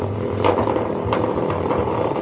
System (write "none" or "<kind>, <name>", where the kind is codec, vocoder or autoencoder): vocoder, BigVGAN v2